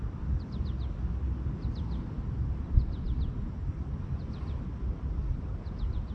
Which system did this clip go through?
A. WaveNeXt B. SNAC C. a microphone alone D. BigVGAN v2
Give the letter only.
C